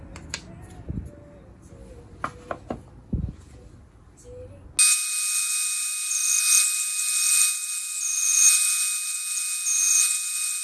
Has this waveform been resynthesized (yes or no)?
no